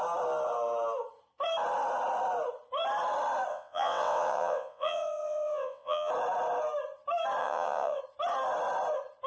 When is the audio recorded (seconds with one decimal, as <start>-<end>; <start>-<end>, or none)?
0.0-3.5; 6.1-7.4; 8.0-9.3